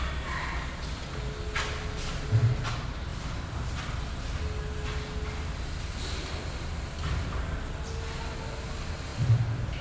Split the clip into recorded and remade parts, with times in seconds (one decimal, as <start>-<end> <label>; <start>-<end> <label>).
0.0-9.1 recorded; 9.1-9.8 remade